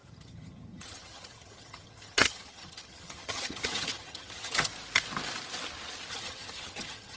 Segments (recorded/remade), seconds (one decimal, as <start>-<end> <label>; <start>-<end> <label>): 0.0-4.7 remade; 4.7-6.1 recorded; 6.1-7.2 remade